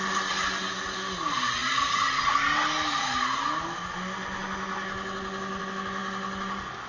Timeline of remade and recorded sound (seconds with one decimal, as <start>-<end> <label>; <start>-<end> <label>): 0.0-6.9 recorded